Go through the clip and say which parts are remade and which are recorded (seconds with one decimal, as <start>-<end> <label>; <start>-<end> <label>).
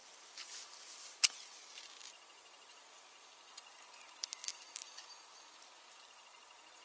0.0-6.8 recorded